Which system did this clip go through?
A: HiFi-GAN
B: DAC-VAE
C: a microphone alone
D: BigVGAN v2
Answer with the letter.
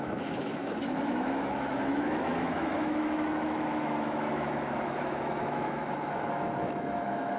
B